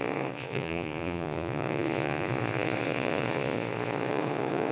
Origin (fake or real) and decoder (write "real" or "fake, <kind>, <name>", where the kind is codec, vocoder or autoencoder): fake, vocoder, Vocos